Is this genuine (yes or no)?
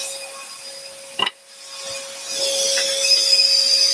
yes